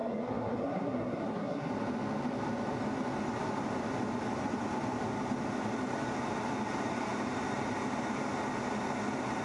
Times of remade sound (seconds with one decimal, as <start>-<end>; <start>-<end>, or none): 0.0-1.7